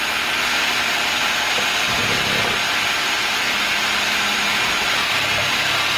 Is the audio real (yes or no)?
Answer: yes